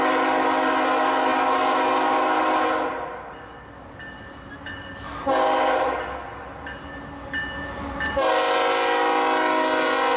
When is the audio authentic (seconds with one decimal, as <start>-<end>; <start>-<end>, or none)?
0.0-10.2